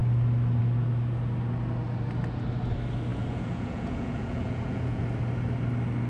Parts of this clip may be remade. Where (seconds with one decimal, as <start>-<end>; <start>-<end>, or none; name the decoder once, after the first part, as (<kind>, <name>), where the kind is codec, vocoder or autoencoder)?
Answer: 3.1-5.0 (vocoder, Vocos)